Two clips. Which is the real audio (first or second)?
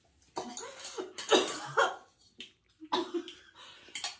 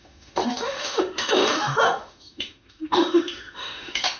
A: first